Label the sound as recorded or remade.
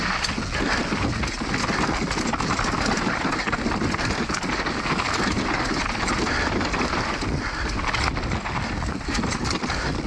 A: recorded